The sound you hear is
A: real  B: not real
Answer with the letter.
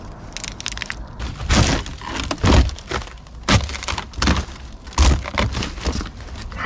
A